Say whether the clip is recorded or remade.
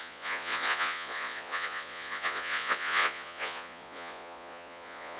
remade